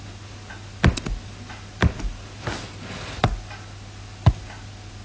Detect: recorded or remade recorded